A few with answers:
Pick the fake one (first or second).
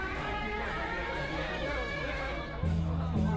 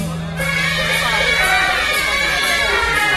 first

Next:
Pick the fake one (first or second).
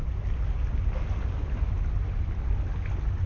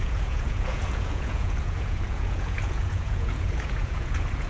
second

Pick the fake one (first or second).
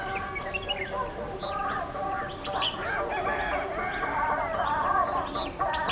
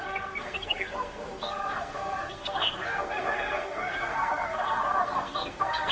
second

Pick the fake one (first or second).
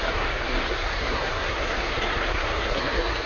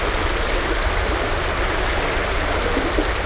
first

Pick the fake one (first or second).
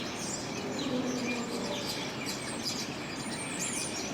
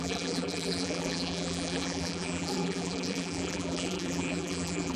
second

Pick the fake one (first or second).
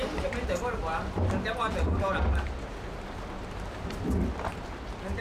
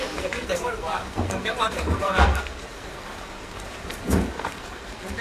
second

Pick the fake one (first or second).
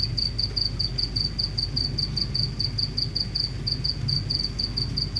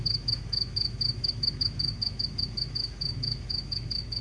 second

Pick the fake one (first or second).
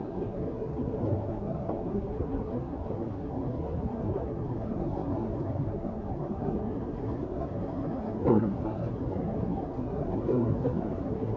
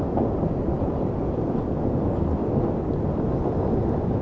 first